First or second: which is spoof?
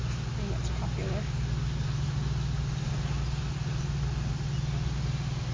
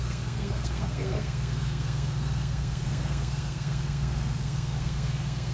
second